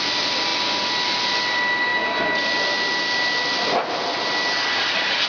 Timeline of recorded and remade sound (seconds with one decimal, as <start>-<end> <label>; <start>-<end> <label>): 0.0-5.3 recorded